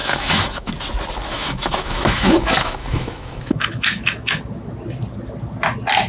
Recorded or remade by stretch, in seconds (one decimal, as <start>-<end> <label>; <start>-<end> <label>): 0.0-0.7 remade; 0.7-1.3 recorded; 1.3-4.4 remade; 4.4-6.1 recorded